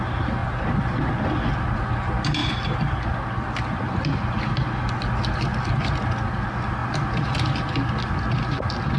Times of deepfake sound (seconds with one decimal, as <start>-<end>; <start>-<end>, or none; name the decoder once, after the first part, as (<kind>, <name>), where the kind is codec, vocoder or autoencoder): none